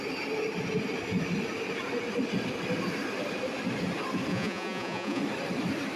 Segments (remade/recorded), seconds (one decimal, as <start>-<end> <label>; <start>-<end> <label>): 0.0-4.3 recorded; 4.3-5.2 remade; 5.2-6.0 recorded